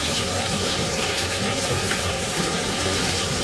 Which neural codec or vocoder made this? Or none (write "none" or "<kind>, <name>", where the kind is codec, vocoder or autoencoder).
codec, SNAC